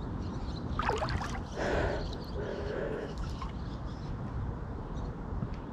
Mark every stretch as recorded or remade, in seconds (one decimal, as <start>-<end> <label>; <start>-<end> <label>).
0.0-2.5 recorded; 2.5-3.3 remade; 3.3-5.7 recorded